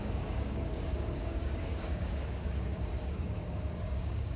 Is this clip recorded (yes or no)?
no